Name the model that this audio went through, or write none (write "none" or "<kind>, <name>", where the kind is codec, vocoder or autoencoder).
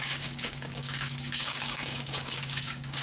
codec, DAC